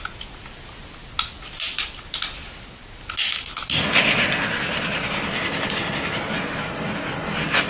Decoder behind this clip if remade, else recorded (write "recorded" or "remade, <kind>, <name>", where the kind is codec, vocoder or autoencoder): recorded